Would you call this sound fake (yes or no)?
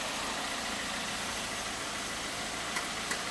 no